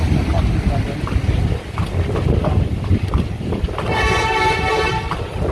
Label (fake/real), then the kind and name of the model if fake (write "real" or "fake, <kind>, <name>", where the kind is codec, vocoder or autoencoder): real